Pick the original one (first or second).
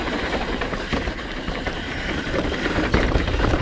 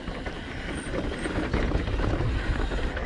second